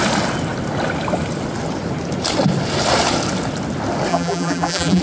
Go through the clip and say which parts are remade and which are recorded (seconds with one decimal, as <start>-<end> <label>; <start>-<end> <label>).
0.0-4.1 recorded; 4.1-5.0 remade